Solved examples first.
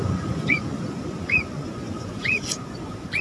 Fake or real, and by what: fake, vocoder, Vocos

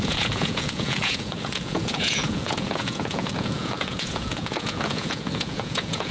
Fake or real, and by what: fake, vocoder, Vocos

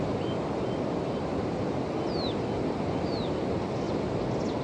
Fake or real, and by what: real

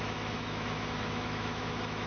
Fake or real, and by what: fake, autoencoder, DAC-VAE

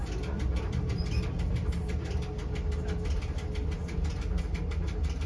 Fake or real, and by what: real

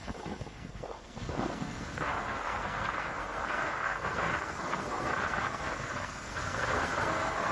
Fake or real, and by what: fake, codec, SNAC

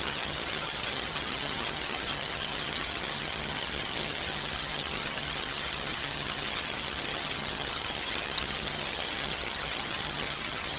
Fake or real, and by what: fake, vocoder, HiFi-GAN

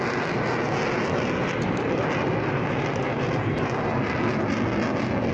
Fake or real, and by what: real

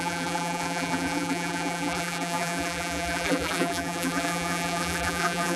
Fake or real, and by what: fake, vocoder, BigVGAN v2